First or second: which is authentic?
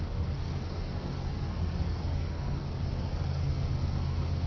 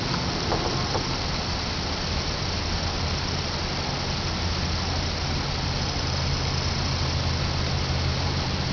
second